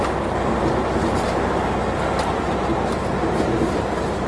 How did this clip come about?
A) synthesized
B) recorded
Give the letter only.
B